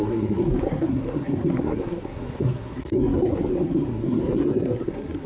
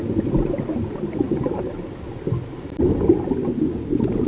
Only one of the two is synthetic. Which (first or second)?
first